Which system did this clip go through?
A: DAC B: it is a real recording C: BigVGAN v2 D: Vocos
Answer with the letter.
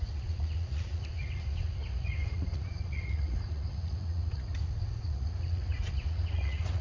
D